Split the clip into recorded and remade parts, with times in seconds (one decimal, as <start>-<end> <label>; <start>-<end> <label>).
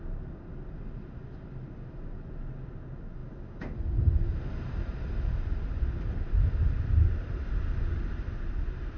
0.0-9.0 recorded